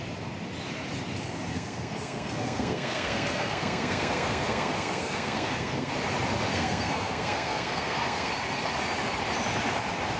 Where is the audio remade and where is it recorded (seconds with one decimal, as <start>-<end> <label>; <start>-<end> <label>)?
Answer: 0.0-1.5 recorded; 1.5-5.9 remade; 5.9-6.5 recorded; 6.5-8.3 remade; 8.3-10.2 recorded